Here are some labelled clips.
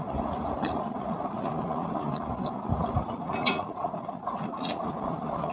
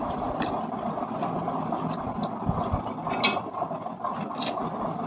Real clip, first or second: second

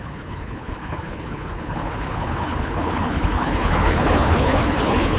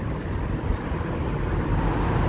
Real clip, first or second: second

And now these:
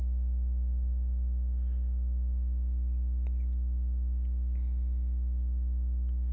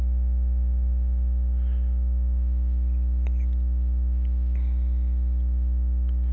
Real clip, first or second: first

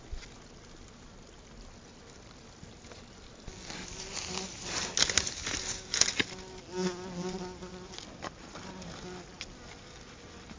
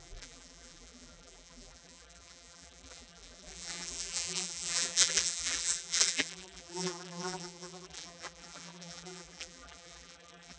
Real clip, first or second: first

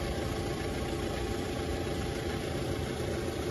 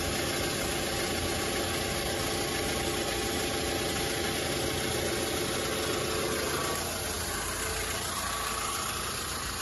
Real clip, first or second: second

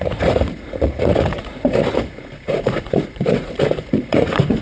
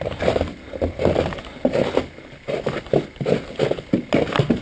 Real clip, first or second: second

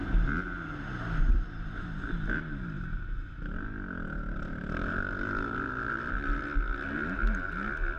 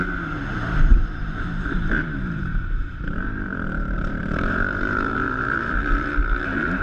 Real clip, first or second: first